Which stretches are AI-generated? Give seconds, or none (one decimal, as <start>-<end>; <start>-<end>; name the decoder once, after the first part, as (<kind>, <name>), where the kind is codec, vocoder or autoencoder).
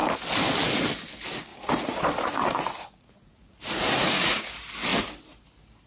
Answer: 1.5-4.5 (vocoder, Vocos)